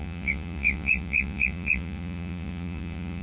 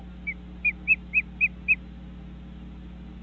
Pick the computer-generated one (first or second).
first